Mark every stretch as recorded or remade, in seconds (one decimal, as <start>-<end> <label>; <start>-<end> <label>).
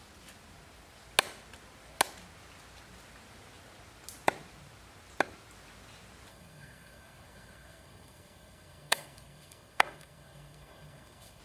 0.0-6.3 recorded; 6.3-11.4 remade